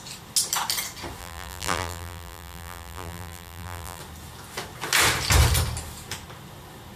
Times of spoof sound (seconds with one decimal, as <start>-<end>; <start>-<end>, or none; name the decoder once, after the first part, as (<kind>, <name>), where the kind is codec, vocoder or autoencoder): 1.2-4.0 (vocoder, BigVGAN v2)